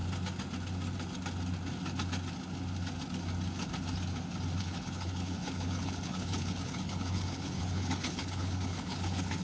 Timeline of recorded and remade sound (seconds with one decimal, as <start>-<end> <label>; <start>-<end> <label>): 0.0-4.6 recorded; 4.6-9.4 remade